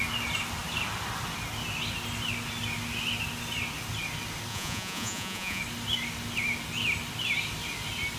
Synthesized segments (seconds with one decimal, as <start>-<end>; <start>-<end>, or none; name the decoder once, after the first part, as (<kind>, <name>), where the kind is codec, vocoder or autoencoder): 4.5-5.6 (vocoder, Vocos)